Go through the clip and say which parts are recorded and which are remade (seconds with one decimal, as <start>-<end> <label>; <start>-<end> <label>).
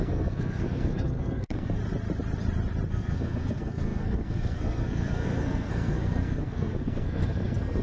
0.0-1.8 remade; 1.8-2.9 recorded; 2.9-7.8 remade